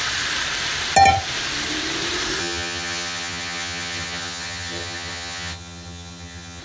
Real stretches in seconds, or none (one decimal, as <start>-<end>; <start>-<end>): 0.0-2.4